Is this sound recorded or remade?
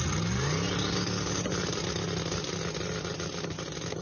recorded